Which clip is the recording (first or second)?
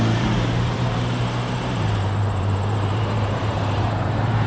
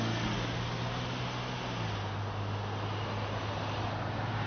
second